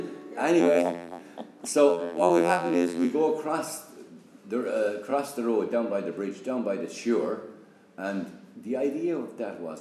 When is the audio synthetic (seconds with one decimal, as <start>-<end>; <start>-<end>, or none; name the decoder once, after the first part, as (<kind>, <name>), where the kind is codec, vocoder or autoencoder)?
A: 0.6-1.2 (vocoder, BigVGAN v2); 1.9-3.1